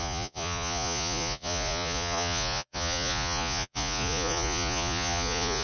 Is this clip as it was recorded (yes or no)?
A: no